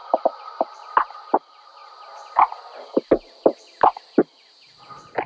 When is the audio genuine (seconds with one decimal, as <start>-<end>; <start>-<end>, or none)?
0.6-5.3